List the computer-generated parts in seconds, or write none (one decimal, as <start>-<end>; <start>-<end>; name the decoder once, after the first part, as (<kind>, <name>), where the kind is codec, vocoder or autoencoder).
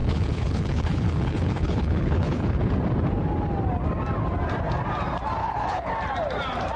0.0-2.7 (codec, HILCodec); 5.4-5.9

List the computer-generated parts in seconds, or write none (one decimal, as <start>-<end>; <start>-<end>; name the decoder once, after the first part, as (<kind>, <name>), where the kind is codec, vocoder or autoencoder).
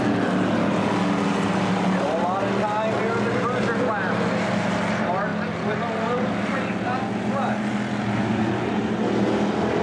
none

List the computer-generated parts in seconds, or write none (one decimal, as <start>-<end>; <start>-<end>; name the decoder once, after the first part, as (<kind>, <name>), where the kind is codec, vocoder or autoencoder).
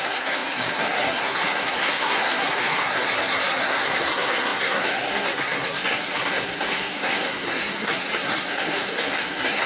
0.0-9.7 (codec, SNAC)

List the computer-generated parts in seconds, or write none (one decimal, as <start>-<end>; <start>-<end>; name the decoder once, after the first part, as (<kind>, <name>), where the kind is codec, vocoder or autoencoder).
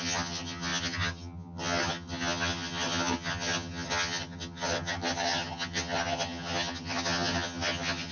0.0-8.1 (vocoder, HiFi-GAN)